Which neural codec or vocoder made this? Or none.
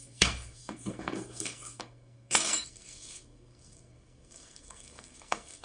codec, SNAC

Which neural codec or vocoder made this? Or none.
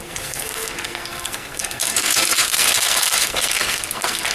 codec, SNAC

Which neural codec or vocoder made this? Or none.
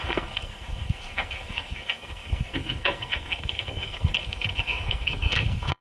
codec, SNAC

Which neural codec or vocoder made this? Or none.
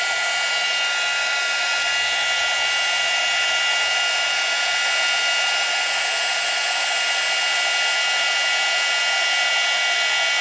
none